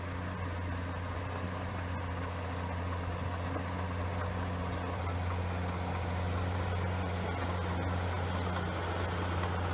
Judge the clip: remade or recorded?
recorded